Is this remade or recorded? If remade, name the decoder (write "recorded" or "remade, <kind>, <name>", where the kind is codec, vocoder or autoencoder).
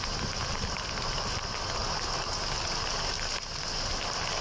recorded